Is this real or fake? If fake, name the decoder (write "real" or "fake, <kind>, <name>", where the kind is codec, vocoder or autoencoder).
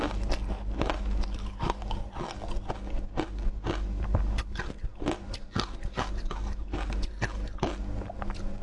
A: real